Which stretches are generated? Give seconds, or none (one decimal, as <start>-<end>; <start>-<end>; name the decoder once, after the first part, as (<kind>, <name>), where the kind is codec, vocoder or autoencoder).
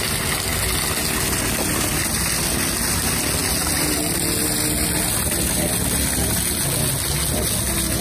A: none